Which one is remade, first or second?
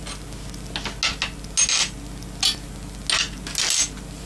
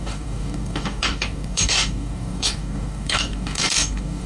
second